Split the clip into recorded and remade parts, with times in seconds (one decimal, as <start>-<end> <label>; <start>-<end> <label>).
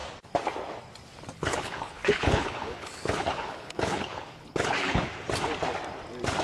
0.0-1.3 recorded; 1.3-5.1 remade; 5.1-6.4 recorded